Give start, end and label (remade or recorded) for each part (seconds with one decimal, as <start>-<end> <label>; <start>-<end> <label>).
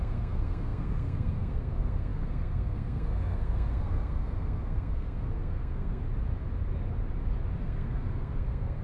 0.0-6.0 remade; 6.0-7.6 recorded; 7.6-8.8 remade